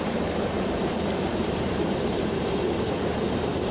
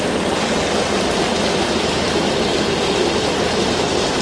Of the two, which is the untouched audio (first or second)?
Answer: second